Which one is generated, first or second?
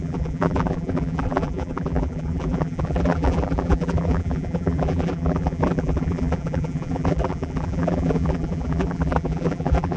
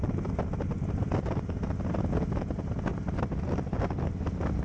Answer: first